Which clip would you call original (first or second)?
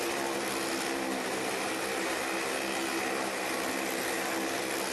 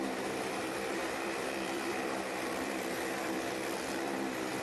first